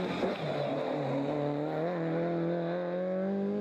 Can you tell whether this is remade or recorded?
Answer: recorded